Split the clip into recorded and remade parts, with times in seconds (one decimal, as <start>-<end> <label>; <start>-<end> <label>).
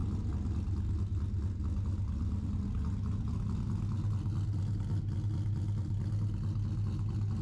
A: 0.0-7.4 recorded